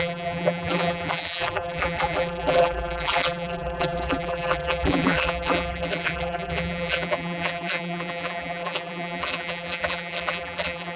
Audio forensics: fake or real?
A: fake